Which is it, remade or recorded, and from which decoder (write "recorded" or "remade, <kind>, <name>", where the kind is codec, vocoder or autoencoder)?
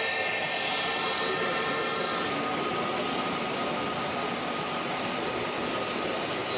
recorded